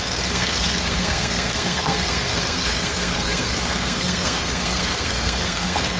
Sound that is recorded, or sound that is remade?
remade